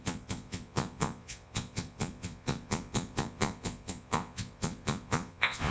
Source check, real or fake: fake